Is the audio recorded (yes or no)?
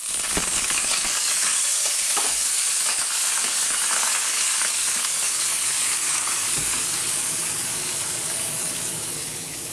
no